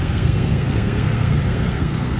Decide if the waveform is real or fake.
fake